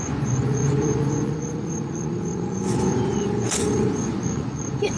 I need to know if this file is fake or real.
fake